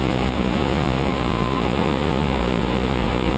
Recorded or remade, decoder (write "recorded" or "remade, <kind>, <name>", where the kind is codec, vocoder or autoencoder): remade, vocoder, Vocos